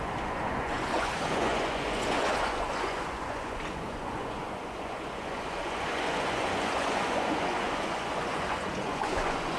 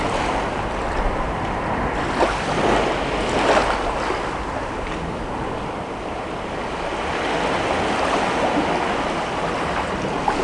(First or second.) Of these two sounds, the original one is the second